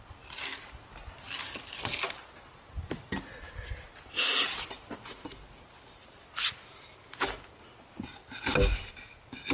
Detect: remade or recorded recorded